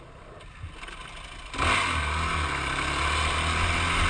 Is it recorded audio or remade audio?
recorded